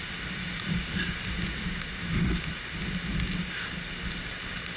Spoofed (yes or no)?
no